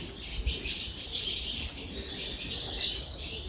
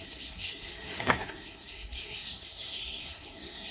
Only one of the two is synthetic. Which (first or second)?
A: second